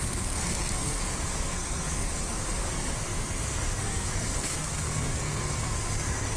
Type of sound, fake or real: fake